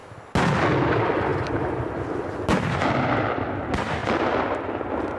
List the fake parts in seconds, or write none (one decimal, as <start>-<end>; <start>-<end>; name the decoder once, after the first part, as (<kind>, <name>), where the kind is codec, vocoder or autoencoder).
none